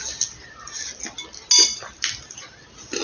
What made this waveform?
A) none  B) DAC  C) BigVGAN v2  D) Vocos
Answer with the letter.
A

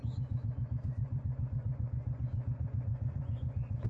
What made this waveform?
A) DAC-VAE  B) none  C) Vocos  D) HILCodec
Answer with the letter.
C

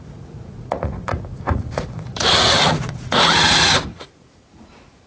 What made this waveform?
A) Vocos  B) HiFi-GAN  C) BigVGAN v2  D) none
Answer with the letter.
A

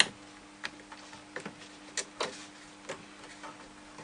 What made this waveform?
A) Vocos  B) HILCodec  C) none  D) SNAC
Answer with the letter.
C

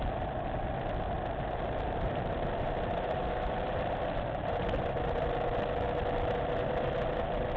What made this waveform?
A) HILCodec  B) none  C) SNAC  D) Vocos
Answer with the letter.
B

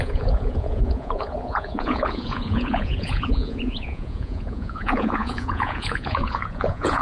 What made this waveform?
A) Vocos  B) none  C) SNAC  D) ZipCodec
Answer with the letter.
A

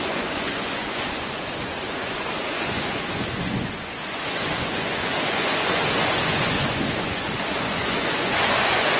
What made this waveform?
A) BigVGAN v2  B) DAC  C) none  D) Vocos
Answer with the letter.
D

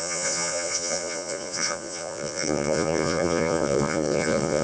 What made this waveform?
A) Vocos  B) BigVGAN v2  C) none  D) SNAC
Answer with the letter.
A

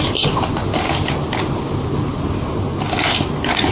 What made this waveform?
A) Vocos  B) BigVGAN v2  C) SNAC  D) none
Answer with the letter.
D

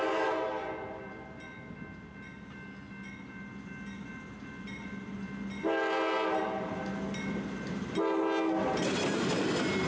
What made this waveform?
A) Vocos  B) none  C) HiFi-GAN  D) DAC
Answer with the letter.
B